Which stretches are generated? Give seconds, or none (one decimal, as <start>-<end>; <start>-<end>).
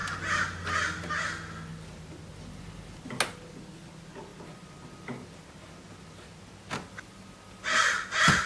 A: none